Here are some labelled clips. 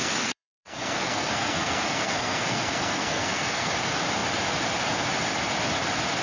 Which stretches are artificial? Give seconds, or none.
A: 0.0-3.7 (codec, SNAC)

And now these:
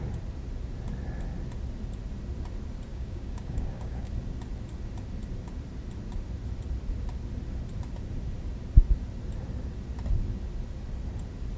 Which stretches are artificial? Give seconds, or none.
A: 2.9-4.1 (codec, DAC)

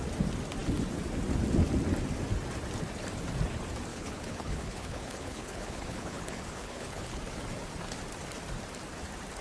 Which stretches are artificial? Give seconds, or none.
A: 3.9-7.2 (codec, HILCodec)

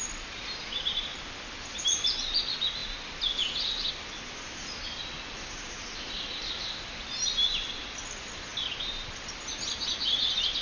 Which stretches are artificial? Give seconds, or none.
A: none